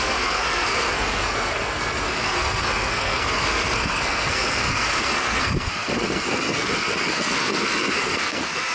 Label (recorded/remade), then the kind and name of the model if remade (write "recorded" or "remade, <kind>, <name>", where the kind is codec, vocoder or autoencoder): remade, codec, SNAC